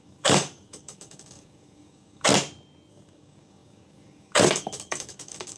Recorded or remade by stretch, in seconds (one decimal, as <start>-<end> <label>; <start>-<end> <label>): 0.0-2.3 remade; 2.3-2.9 recorded; 2.9-5.6 remade